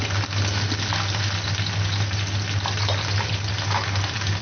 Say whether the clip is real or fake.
real